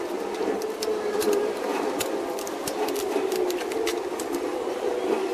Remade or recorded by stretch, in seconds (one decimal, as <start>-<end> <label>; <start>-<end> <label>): 0.0-0.9 recorded; 0.9-3.7 remade; 3.7-4.5 recorded; 4.5-5.3 remade